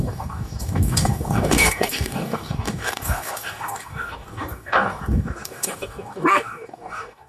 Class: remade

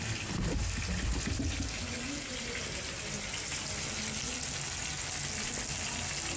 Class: recorded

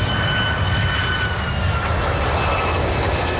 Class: recorded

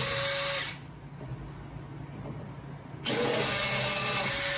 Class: recorded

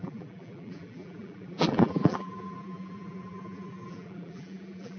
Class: remade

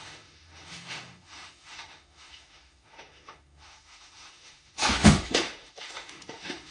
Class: remade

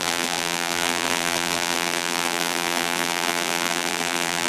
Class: remade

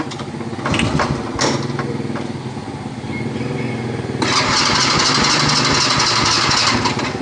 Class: recorded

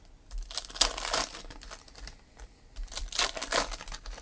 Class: recorded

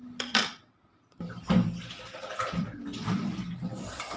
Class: remade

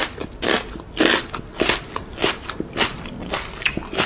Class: recorded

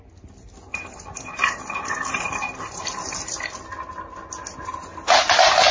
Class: recorded